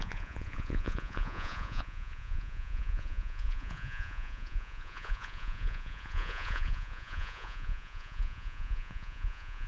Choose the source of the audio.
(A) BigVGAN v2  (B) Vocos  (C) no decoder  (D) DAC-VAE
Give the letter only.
B